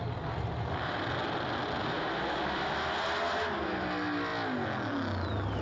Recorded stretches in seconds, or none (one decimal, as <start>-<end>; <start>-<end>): 0.0-5.6